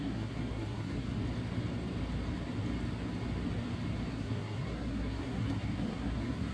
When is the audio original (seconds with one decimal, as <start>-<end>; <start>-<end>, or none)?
1.2-4.1